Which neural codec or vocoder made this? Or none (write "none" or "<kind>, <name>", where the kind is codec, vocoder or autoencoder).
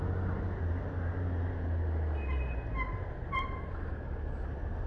none